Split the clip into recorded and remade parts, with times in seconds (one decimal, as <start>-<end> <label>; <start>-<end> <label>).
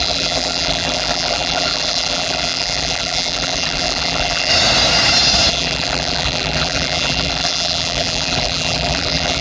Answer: 0.0-4.5 remade; 4.5-5.5 recorded; 5.5-9.4 remade